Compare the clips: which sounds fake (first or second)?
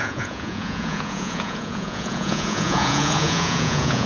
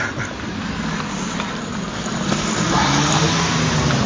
first